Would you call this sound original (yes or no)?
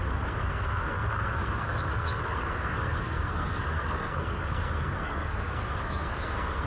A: no